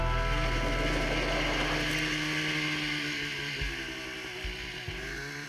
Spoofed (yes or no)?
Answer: no